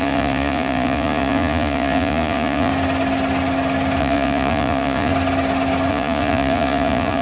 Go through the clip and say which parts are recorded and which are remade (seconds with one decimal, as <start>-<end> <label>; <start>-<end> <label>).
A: 0.0-2.7 remade; 2.7-4.0 recorded; 4.0-5.1 remade; 5.1-5.9 recorded; 5.9-7.2 remade